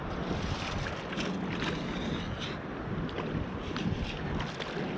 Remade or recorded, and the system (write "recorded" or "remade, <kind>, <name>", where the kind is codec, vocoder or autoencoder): recorded